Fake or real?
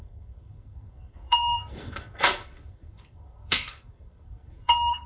fake